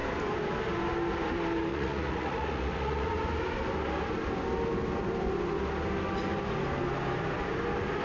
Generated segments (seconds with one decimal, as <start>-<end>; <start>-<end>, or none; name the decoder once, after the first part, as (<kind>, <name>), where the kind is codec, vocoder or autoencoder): 1.7-3.1 (vocoder, Vocos)